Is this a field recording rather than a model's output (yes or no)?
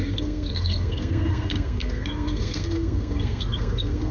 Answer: no